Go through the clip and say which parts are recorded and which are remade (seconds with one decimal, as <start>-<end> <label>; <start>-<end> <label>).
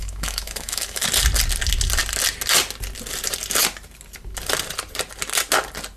0.0-1.0 remade; 1.0-6.0 recorded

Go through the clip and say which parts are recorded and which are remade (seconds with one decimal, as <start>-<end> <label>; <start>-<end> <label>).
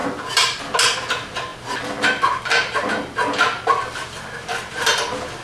0.0-0.6 remade; 0.6-5.4 recorded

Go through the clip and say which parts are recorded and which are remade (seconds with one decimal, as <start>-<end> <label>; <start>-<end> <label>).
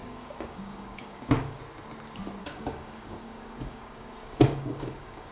0.0-1.6 remade; 1.6-2.4 recorded; 2.4-5.3 remade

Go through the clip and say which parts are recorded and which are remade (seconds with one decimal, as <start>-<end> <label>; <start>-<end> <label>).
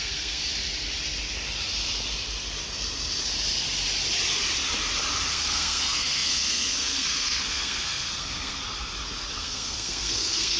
0.0-0.4 remade; 0.4-5.3 recorded; 5.3-8.6 remade; 8.6-9.3 recorded; 9.3-10.6 remade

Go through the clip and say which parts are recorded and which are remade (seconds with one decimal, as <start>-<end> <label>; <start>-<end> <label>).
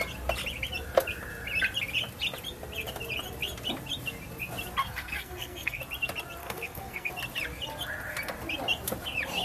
0.0-4.8 recorded; 4.8-5.8 remade; 5.8-6.4 recorded; 6.4-7.1 remade; 7.1-9.4 recorded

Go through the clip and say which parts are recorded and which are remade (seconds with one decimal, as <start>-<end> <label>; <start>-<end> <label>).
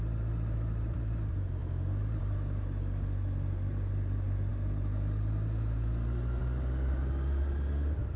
0.0-8.2 recorded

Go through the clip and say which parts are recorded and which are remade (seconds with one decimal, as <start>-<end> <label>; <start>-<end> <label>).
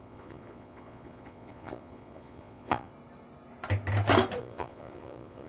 0.0-2.9 remade; 2.9-4.4 recorded; 4.4-5.5 remade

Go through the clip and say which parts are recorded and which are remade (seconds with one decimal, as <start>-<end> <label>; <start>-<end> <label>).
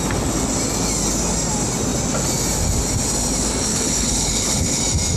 0.0-3.7 recorded; 3.7-4.8 remade; 4.8-5.2 recorded